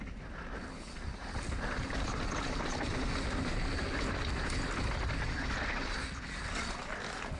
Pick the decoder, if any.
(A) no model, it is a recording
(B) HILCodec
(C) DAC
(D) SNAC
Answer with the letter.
A